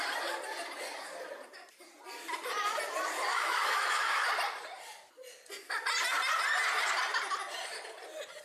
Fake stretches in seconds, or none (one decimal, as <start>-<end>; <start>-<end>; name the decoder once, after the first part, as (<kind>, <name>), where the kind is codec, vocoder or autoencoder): 3.3-4.3 (autoencoder, DAC-VAE)